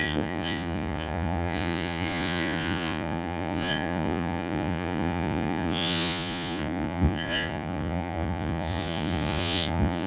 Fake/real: fake